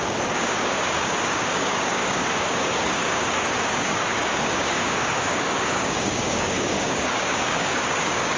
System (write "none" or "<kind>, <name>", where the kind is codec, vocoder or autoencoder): codec, DAC